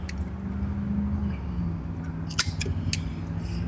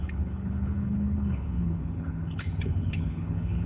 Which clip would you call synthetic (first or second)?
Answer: second